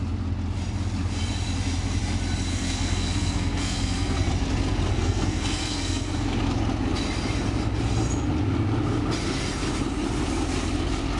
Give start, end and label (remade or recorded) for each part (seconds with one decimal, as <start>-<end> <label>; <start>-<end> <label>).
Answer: 0.0-2.5 recorded; 2.5-4.3 remade; 4.3-4.9 recorded; 4.9-6.1 remade; 6.1-11.2 recorded